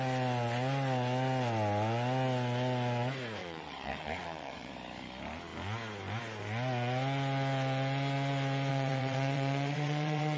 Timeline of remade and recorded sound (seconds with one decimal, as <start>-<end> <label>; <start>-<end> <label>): 0.0-3.4 recorded; 3.4-4.7 remade; 4.7-8.7 recorded; 8.7-10.4 remade